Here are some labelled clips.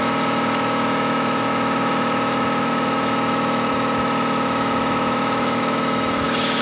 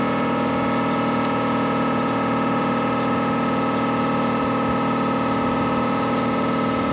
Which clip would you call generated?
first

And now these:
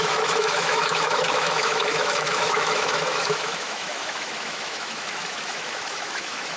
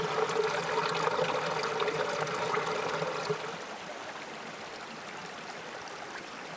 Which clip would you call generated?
first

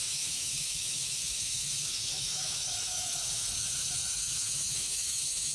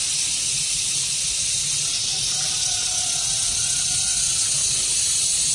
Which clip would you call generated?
first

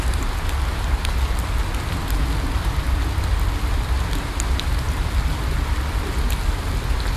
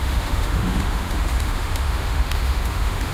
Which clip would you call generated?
second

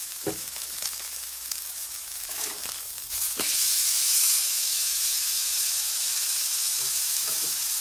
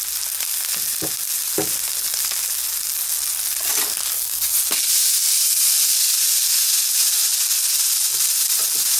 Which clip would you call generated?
first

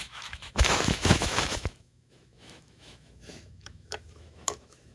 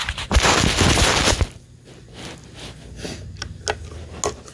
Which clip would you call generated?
first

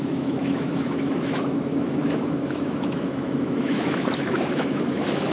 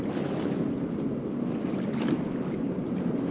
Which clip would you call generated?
first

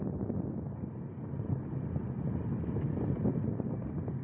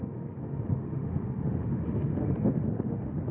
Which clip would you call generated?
second